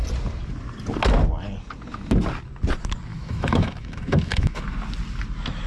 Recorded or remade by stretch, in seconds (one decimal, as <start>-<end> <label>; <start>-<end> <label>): 0.0-3.1 recorded; 3.1-4.6 remade; 4.6-5.7 recorded